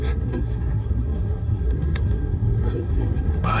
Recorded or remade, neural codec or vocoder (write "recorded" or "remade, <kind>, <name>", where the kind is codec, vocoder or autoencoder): remade, codec, SNAC